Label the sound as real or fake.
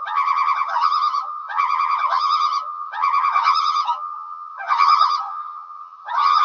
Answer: fake